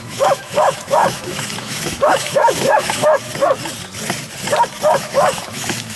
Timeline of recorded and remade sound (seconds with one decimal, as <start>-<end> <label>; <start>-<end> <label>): 0.0-3.3 remade; 3.3-5.0 recorded; 5.0-6.0 remade